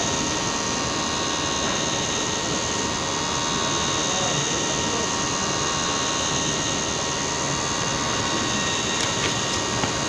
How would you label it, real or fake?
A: real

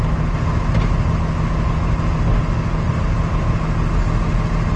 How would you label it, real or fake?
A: real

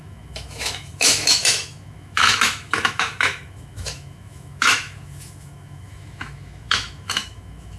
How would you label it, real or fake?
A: fake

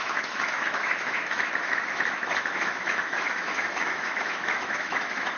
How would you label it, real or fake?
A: fake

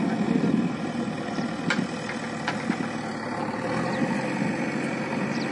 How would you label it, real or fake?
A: real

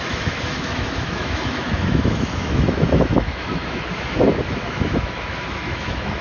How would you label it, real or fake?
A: fake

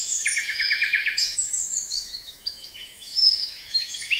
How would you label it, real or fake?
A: fake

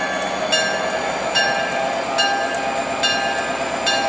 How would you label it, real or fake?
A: real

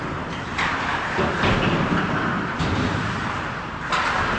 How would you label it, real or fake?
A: real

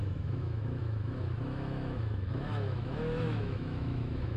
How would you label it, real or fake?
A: fake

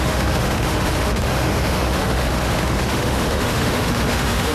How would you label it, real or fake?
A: fake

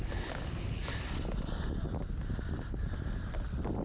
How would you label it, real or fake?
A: real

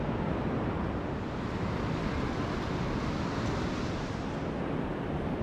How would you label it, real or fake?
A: real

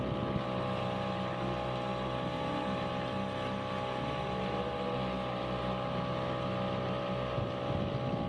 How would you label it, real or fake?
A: real